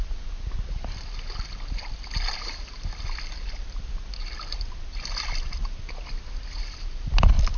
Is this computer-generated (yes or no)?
no